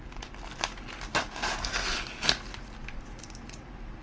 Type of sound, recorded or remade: recorded